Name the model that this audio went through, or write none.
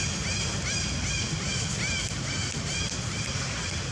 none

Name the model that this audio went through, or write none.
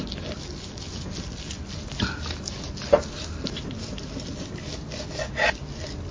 none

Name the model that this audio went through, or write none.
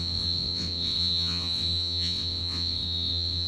vocoder, WaveNeXt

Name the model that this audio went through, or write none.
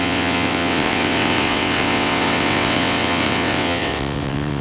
vocoder, WaveNeXt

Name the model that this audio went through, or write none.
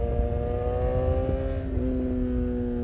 none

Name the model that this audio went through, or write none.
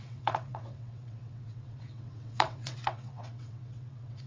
vocoder, WaveNeXt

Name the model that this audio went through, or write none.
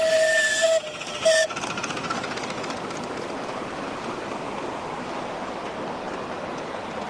none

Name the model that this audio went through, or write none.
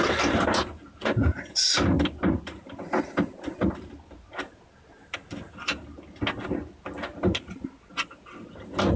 none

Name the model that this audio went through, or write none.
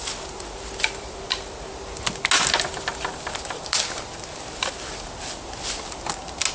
none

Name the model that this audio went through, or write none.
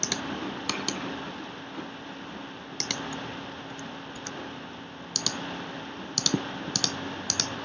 none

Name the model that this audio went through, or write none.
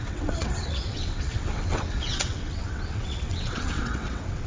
vocoder, WaveNeXt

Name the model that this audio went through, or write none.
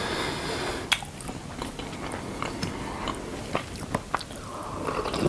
none